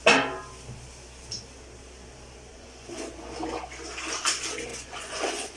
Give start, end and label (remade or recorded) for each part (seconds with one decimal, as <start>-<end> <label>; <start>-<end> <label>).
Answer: 0.0-2.5 recorded; 2.5-3.3 remade; 3.3-4.7 recorded; 4.7-5.6 remade